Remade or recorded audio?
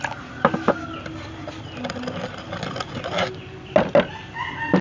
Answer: recorded